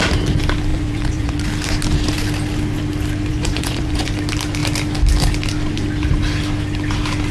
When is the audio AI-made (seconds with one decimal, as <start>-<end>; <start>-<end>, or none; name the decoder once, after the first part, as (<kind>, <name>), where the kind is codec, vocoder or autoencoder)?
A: 0.7-1.4 (vocoder, Vocos); 3.3-4.1